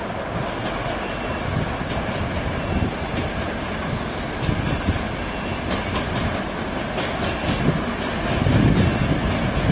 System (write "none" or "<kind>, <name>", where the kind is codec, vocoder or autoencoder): none